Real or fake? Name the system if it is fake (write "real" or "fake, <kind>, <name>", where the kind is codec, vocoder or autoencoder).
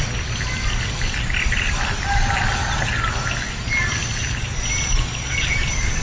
real